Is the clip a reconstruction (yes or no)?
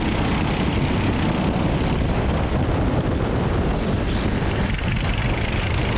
no